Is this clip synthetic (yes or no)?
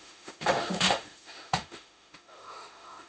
yes